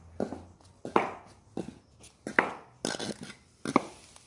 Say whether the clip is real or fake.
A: real